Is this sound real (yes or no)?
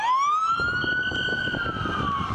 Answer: yes